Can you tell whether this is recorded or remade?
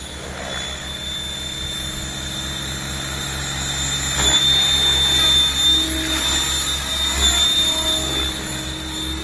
recorded